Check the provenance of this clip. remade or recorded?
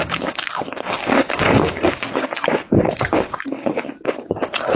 remade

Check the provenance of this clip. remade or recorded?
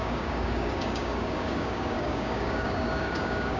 remade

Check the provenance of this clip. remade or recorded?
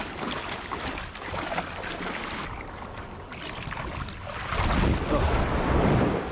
recorded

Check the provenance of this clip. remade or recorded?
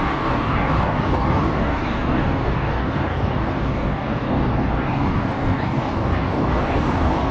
remade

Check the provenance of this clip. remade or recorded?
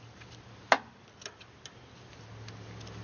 recorded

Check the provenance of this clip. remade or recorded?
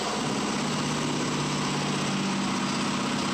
recorded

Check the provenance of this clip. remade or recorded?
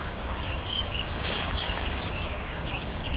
remade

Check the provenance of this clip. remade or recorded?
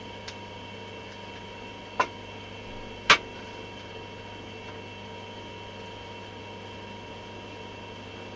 recorded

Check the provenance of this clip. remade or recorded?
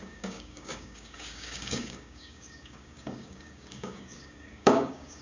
remade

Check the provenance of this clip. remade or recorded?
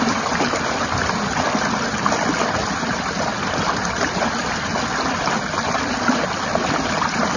recorded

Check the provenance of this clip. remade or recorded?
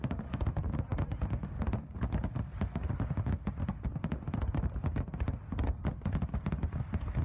recorded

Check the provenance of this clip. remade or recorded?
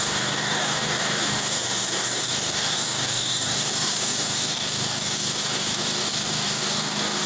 remade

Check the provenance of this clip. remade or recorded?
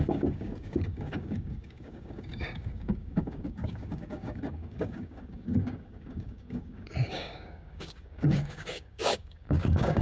remade